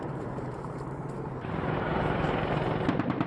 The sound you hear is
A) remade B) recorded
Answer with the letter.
A